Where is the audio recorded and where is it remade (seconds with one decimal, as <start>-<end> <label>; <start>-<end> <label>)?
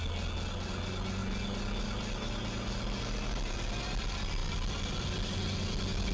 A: 0.0-6.1 recorded